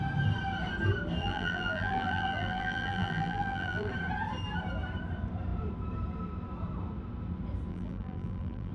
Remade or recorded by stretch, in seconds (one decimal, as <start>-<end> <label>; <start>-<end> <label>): 0.0-1.2 recorded; 1.2-3.9 remade; 3.9-7.7 recorded; 7.7-8.7 remade